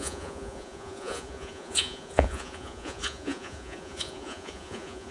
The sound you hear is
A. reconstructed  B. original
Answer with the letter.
A